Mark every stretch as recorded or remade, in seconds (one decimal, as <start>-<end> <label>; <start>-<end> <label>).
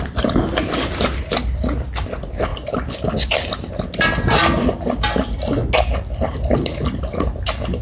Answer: 0.0-7.8 recorded